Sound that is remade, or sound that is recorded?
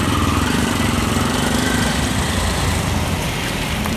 recorded